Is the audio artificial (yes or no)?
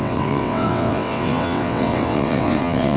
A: yes